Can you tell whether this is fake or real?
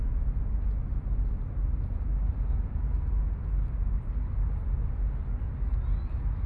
real